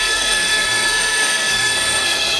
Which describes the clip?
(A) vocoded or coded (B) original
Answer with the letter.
A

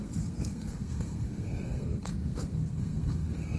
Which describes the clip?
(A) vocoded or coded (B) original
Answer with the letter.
A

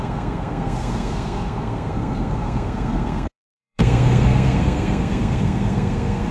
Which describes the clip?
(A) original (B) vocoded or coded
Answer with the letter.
B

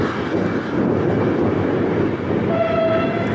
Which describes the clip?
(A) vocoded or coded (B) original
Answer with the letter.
B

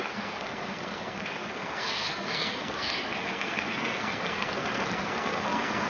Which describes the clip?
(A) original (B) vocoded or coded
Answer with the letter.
B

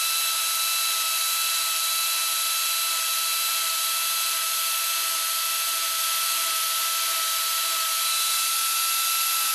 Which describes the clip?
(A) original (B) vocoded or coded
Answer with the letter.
A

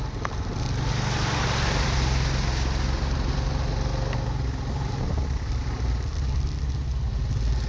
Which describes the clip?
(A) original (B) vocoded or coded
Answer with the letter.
A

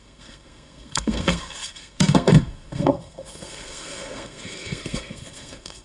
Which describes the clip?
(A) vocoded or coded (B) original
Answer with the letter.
A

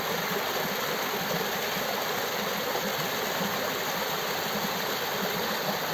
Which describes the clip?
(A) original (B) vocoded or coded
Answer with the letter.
A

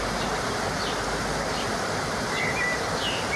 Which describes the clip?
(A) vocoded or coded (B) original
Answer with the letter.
B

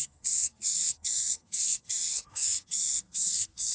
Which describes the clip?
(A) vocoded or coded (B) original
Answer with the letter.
A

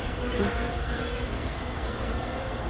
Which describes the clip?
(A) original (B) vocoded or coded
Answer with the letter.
B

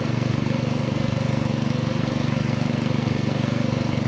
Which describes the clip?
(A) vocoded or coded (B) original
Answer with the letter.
A